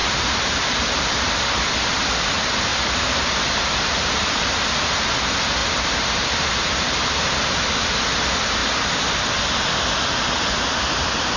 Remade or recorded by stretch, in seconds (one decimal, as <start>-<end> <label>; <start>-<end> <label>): 0.0-1.2 remade; 1.2-2.7 recorded; 2.7-4.5 remade; 4.5-5.6 recorded; 5.6-7.5 remade; 7.5-11.4 recorded